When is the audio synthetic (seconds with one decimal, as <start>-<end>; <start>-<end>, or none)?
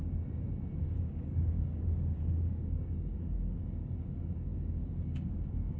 0.8-5.8